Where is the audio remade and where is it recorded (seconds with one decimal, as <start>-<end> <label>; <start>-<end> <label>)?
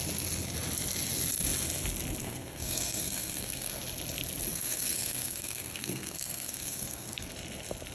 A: 0.0-2.2 recorded; 2.2-3.8 remade; 3.8-4.5 recorded; 4.5-7.3 remade; 7.3-7.9 recorded